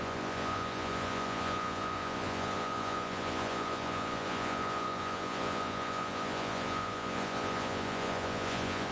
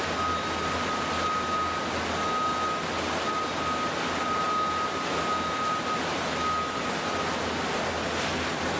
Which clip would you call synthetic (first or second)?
first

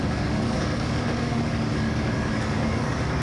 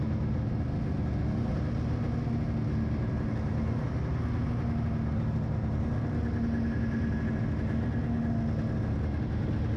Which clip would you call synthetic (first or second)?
first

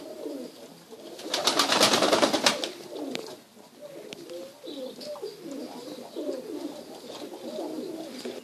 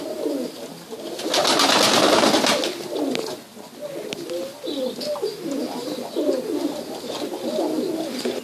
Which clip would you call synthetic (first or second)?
first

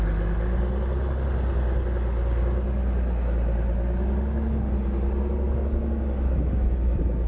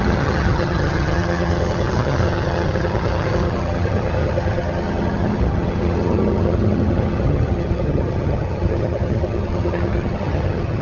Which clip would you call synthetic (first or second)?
second